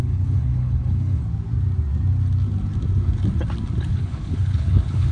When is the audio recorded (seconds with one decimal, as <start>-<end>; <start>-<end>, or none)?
1.2-3.9